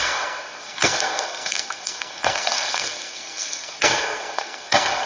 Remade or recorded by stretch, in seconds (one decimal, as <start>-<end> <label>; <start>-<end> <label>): 0.0-5.1 remade